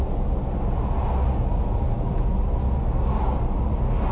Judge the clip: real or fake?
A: real